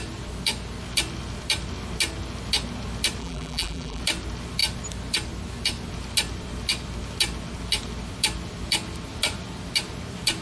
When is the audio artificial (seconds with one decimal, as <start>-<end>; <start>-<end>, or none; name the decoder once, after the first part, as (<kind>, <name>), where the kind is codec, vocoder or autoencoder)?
3.2-4.0 (vocoder, BigVGAN v2)

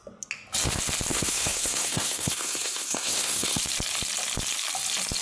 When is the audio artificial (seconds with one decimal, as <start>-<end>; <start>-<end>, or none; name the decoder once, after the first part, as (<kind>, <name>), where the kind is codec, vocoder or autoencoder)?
1.1-3.6 (codec, SNAC)

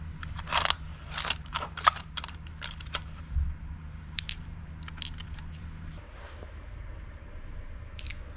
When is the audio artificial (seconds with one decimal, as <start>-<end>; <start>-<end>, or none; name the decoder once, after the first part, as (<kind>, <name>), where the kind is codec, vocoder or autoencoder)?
0.9-4.7 (vocoder, BigVGAN v2); 5.2-5.9